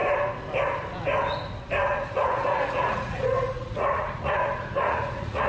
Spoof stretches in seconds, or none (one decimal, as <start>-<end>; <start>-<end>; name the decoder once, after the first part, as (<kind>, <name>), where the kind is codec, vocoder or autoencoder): 1.9-5.5 (vocoder, Vocos)